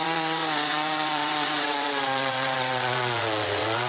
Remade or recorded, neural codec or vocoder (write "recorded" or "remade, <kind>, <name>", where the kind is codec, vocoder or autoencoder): remade, vocoder, WaveNeXt